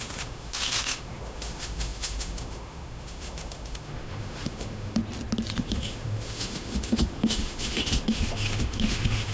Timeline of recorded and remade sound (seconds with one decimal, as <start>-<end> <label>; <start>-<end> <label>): 0.0-5.0 remade; 5.0-5.6 recorded; 5.6-9.3 remade